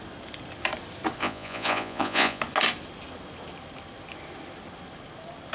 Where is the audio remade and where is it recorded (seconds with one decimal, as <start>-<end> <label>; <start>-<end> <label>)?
0.0-1.2 recorded; 1.2-2.4 remade; 2.4-5.5 recorded